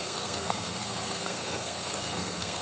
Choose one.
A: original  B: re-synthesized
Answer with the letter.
B